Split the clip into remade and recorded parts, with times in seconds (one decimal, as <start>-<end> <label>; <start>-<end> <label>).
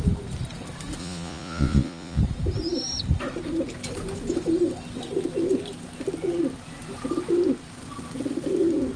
0.0-1.0 recorded; 1.0-2.2 remade; 2.2-9.0 recorded